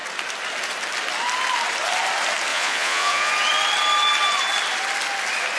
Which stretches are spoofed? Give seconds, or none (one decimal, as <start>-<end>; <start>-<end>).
2.5-3.3